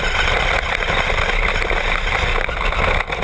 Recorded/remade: recorded